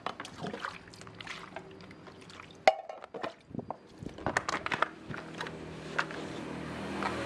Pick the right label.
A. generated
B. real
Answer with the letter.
B